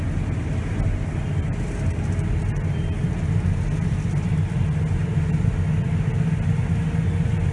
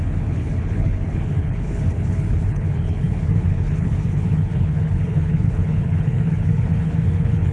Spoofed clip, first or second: second